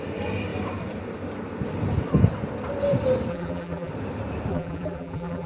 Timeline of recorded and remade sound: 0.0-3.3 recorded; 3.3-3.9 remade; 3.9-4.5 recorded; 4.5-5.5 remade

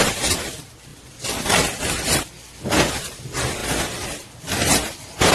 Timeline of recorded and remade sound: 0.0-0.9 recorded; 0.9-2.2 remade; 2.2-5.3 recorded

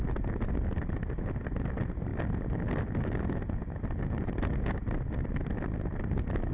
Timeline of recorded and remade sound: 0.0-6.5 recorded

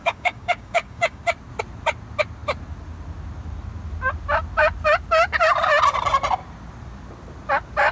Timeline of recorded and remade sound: 0.0-1.2 remade; 1.2-7.9 recorded